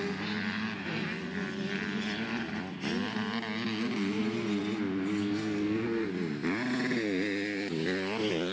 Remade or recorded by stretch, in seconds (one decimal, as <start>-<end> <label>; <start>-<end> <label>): 0.0-5.2 recorded; 5.2-6.1 remade; 6.1-8.5 recorded